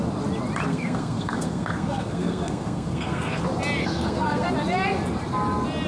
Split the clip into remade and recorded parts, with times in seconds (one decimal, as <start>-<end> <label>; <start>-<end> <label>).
0.0-0.7 recorded; 0.7-3.4 remade; 3.4-3.8 recorded; 3.8-4.5 remade; 4.5-5.9 recorded

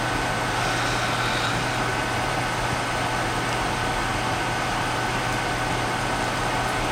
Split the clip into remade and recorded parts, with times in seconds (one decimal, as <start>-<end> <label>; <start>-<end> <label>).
0.0-6.9 recorded

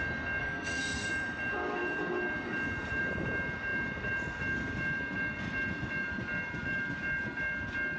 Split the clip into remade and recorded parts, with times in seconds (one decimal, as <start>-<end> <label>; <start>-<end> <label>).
0.0-0.4 recorded; 0.4-1.1 remade; 1.1-8.0 recorded

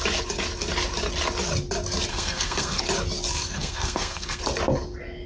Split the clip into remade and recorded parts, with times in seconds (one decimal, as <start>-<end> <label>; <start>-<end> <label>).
0.0-2.1 recorded; 2.1-2.8 remade; 2.8-3.3 recorded; 3.3-4.4 remade; 4.4-5.3 recorded

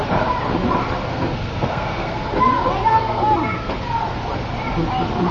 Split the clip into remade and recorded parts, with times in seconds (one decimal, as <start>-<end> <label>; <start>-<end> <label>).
0.0-1.1 recorded; 1.1-2.4 remade; 2.4-2.9 recorded; 2.9-3.7 remade; 3.7-5.3 recorded

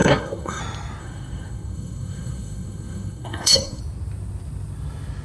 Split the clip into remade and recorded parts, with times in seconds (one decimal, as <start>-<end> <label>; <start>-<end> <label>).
0.0-0.6 remade; 0.6-1.0 recorded; 1.0-3.8 remade; 3.8-5.2 recorded

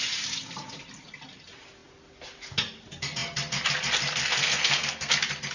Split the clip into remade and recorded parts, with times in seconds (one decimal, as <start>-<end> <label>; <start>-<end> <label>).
0.0-4.2 recorded; 4.2-5.1 remade; 5.1-5.5 recorded

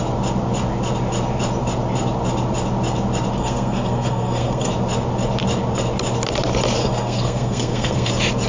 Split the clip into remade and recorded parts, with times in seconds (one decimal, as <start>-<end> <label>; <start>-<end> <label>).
0.0-3.4 recorded; 3.4-4.7 remade; 4.7-6.8 recorded; 6.8-8.1 remade; 8.1-8.5 recorded